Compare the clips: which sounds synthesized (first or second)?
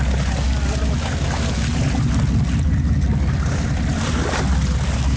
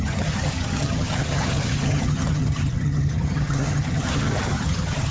second